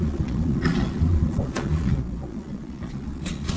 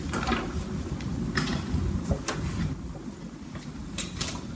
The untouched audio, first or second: second